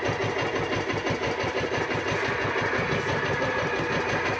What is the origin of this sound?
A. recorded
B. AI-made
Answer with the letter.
A